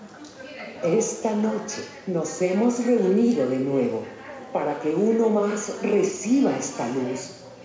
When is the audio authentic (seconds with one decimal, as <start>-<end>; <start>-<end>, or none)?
0.0-7.6